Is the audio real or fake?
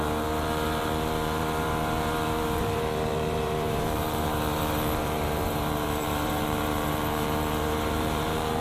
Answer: fake